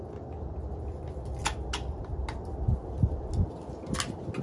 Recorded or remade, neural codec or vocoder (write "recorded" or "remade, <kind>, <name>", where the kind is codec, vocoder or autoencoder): recorded